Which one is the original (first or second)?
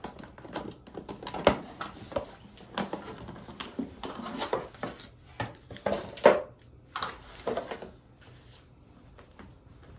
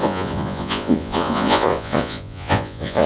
first